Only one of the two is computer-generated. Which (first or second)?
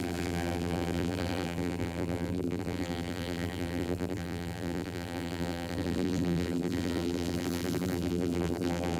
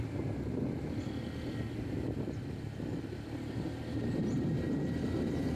first